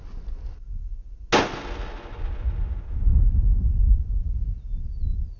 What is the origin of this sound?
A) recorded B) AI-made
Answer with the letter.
A